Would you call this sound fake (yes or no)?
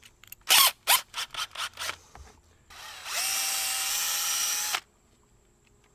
no